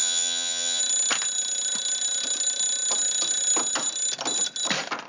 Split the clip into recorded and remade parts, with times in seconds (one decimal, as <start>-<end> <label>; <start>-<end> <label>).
0.0-0.8 remade; 0.8-5.1 recorded